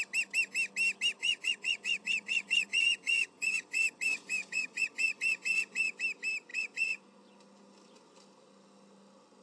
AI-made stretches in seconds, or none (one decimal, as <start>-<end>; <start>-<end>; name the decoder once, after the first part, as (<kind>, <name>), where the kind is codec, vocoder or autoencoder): 1.2-5.9 (vocoder, Vocos); 6.5-7.0